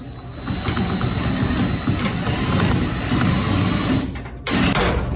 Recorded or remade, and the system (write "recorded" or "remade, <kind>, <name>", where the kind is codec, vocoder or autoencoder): recorded